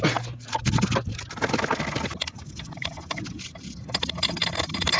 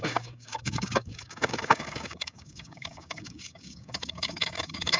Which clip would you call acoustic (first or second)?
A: first